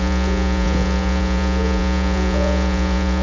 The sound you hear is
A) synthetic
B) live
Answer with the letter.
A